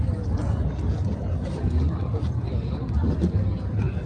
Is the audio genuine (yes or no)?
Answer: yes